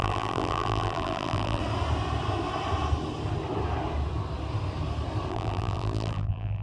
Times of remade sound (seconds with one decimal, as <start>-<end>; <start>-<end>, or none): 0.0-1.6; 5.3-6.6